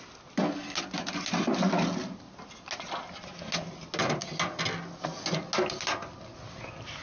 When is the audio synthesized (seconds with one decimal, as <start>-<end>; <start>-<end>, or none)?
none